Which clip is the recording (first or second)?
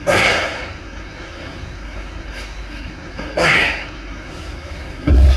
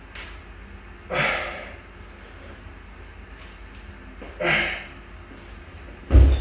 second